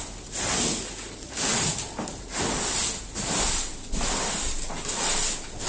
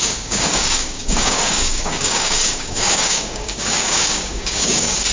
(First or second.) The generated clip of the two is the second